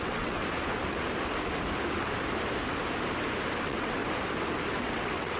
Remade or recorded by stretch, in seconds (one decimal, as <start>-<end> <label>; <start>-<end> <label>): 0.0-0.4 remade; 0.4-3.6 recorded; 3.6-4.0 remade; 4.0-4.8 recorded; 4.8-5.4 remade